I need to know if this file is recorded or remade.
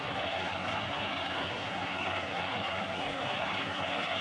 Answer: remade